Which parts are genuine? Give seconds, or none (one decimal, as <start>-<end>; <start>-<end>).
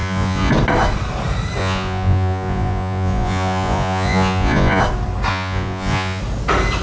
0.5-1.6; 4.8-5.3; 6.2-6.8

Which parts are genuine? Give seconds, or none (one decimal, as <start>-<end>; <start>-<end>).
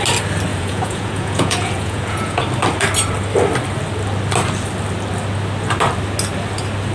0.0-0.5; 2.4-6.9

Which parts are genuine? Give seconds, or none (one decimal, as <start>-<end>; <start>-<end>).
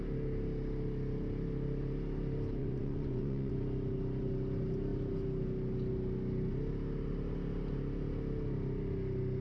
0.0-2.6; 3.5-9.4